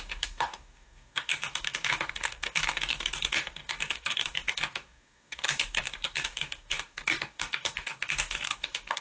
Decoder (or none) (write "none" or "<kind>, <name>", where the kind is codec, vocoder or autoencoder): codec, DAC